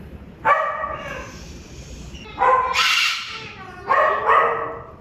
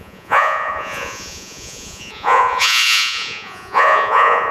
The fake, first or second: second